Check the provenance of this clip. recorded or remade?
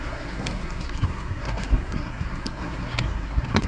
remade